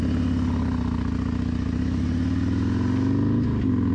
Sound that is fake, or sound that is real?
real